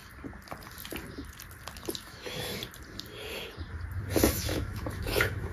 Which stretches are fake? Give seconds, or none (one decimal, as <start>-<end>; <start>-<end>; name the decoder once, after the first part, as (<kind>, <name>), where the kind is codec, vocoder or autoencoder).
2.0-2.6 (autoencoder, DAC-VAE); 4.3-5.5